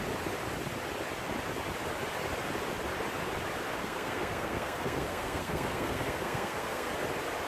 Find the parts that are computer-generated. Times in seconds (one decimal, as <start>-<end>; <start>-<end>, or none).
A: 3.8-6.9

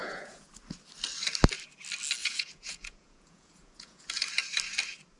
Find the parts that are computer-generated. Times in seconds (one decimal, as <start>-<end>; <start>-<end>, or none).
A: 0.0-0.5; 2.2-4.1

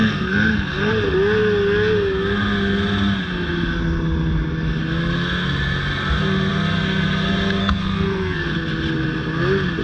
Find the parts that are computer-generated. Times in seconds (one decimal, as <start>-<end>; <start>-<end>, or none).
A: 0.0-0.9; 7.6-8.4

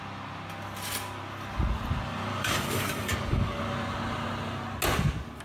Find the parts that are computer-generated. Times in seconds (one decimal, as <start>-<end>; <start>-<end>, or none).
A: 2.3-3.6